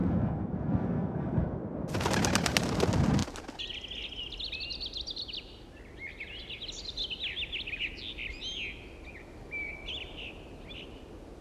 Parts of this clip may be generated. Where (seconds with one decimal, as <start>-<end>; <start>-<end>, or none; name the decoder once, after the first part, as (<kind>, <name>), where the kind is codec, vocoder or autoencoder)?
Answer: 0.0-1.6 (codec, SNAC)